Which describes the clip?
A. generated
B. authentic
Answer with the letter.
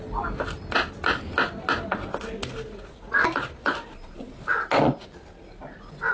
B